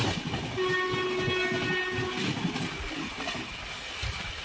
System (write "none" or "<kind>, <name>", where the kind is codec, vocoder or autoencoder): none